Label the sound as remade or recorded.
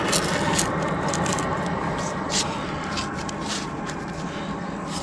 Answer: recorded